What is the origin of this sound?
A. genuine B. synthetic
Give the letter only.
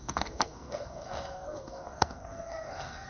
B